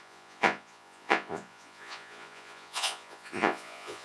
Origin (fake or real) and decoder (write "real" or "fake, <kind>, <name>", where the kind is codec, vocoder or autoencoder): fake, vocoder, Vocos